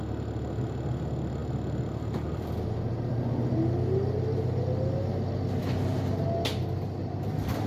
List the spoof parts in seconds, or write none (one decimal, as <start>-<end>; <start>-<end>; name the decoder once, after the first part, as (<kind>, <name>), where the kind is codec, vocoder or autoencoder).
none